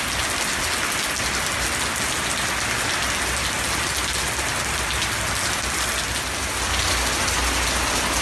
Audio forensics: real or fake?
real